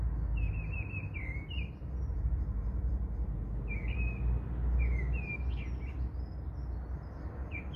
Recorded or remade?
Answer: recorded